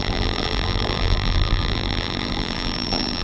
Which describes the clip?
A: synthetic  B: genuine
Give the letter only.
A